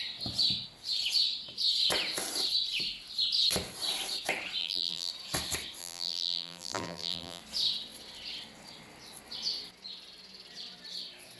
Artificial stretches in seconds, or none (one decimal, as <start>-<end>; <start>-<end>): 4.6-5.1; 5.8-7.4